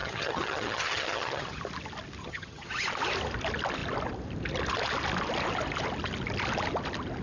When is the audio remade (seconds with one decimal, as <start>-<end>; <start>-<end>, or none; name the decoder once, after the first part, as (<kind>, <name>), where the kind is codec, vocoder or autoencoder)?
0.0-1.6 (vocoder, HiFi-GAN); 2.2-2.7